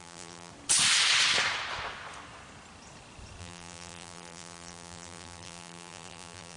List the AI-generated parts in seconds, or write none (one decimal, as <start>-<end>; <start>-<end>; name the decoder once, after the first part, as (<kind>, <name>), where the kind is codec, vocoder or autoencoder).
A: 0.0-0.5 (vocoder, BigVGAN v2); 3.4-6.6